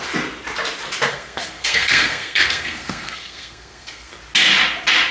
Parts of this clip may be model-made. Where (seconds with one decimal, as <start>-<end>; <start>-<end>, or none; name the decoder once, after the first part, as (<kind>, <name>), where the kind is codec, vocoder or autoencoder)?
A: 1.1-4.1 (codec, SNAC)

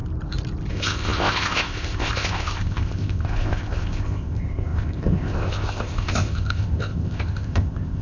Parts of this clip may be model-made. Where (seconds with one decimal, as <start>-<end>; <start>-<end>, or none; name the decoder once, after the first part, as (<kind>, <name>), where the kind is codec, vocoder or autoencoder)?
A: 0.7-8.0 (codec, ZipCodec)

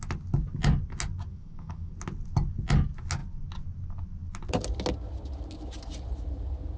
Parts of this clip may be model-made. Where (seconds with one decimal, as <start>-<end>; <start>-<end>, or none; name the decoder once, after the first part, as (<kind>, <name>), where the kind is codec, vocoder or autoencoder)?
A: 1.3-1.9 (autoencoder, DAC-VAE)

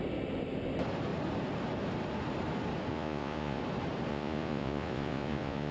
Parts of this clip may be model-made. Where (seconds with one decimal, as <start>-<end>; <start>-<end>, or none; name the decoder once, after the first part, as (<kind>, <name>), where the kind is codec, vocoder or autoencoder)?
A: 2.9-3.6 (vocoder, Vocos); 4.1-5.7

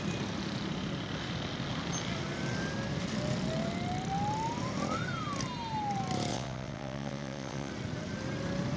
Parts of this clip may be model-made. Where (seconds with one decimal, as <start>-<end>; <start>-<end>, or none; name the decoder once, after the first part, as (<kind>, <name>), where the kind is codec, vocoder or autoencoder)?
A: 6.3-7.7 (vocoder, WaveNeXt)